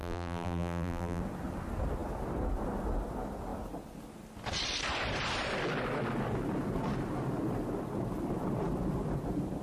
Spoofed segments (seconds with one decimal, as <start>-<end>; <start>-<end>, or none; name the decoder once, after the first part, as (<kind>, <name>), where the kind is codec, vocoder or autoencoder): 0.0-1.2 (vocoder, BigVGAN v2)